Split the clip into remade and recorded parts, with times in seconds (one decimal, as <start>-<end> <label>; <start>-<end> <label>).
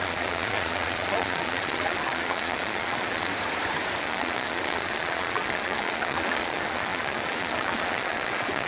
0.0-3.3 remade; 3.3-4.0 recorded; 4.0-8.7 remade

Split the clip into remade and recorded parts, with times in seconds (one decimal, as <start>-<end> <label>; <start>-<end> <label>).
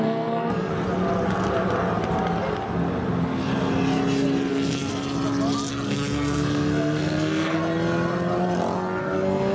0.0-0.7 remade; 0.7-4.5 recorded; 4.5-4.9 remade; 4.9-5.7 recorded; 5.7-7.6 remade; 7.6-9.0 recorded; 9.0-9.5 remade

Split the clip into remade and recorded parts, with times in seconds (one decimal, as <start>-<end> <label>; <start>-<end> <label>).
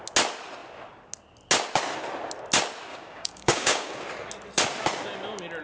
0.0-2.9 recorded; 2.9-3.9 remade; 3.9-5.6 recorded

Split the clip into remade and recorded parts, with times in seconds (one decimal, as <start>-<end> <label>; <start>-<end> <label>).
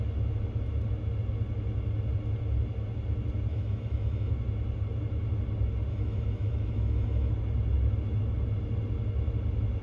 0.0-3.5 recorded; 3.5-4.3 remade; 4.3-5.9 recorded; 5.9-7.3 remade; 7.3-9.8 recorded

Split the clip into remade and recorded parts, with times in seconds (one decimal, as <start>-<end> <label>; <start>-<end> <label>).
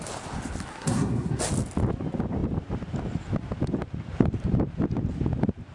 0.0-0.7 recorded; 0.7-1.4 remade; 1.4-5.7 recorded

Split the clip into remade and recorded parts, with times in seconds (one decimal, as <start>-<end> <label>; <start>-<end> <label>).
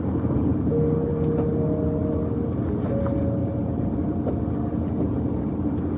0.0-3.4 recorded; 3.4-3.9 remade; 3.9-6.0 recorded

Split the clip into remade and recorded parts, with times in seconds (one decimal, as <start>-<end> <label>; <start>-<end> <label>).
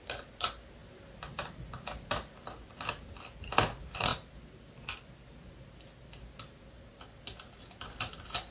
0.0-8.5 recorded